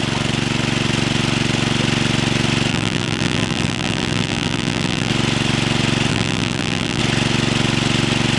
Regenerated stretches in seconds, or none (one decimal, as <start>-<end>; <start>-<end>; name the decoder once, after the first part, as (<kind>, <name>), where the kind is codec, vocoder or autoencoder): 2.7-5.1 (vocoder, BigVGAN v2); 6.1-7.0